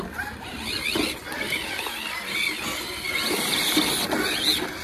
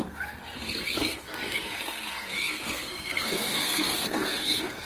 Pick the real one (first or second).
first